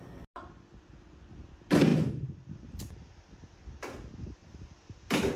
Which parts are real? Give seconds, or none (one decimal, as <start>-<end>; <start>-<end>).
0.0-4.4

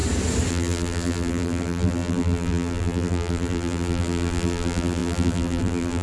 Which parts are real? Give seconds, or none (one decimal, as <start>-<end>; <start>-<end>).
0.0-0.5

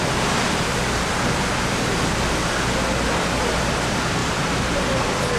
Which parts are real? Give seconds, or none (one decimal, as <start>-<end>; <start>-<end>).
0.0-4.2; 4.8-5.4

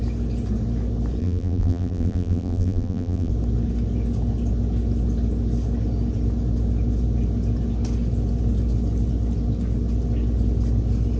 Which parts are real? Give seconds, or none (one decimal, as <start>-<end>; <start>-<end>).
0.0-1.2; 3.3-11.2

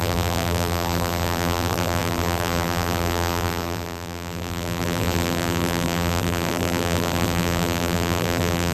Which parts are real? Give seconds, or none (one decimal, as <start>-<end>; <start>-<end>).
none